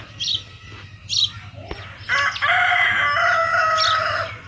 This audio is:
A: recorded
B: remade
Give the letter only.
A